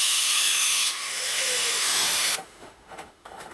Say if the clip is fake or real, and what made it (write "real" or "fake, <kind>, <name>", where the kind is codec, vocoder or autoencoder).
fake, autoencoder, DAC-VAE